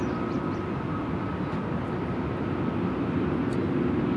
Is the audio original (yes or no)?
yes